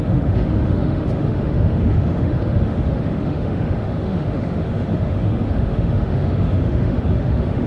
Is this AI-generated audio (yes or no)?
yes